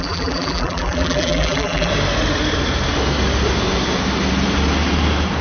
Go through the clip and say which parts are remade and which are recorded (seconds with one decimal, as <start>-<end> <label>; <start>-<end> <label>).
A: 0.0-1.9 remade; 1.9-5.4 recorded